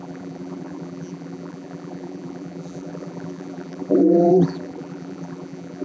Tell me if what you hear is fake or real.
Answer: fake